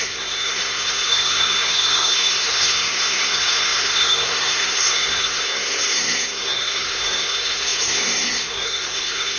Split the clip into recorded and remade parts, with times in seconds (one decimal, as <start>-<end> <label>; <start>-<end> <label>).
0.0-9.4 remade